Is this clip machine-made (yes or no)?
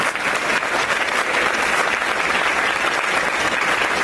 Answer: no